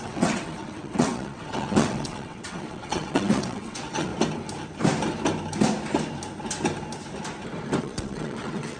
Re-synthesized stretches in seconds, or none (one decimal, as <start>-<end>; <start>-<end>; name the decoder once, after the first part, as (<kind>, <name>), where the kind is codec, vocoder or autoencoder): 0.0-4.1 (vocoder, WaveNeXt); 7.8-8.8